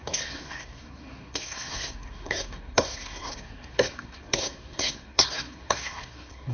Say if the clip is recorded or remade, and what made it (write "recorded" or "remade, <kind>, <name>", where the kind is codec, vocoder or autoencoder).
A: remade, codec, SNAC